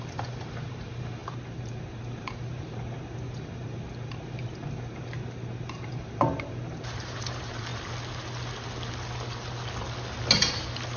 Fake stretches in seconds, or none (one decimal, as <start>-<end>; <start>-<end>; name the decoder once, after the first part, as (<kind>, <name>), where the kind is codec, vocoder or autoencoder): 0.0-7.7 (vocoder, BigVGAN v2)

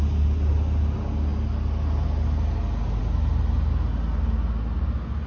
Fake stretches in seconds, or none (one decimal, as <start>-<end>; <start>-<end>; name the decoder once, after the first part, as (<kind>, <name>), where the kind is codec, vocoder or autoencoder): none